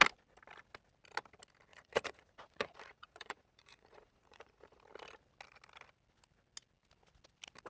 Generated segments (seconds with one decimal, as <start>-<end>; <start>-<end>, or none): 1.7-4.8